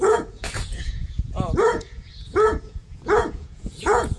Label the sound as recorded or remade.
remade